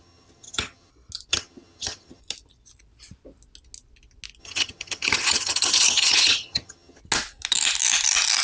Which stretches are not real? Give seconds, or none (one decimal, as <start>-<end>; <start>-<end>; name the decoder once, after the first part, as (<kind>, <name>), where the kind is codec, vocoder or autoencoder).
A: 0.0-0.9 (vocoder, HiFi-GAN); 1.3-2.2; 4.4-7.0

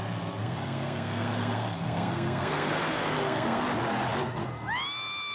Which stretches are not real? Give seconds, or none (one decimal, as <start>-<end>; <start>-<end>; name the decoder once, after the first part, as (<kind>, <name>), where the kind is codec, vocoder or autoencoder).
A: 0.4-3.6 (codec, SNAC)

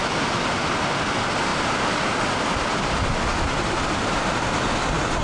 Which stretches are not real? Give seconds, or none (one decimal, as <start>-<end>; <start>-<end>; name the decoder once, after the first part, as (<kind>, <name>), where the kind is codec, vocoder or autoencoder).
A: none

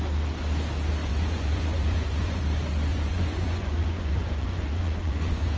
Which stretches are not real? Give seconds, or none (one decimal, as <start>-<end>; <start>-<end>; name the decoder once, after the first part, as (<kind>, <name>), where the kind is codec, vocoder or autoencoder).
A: 1.0-2.4 (vocoder, Vocos); 2.9-5.6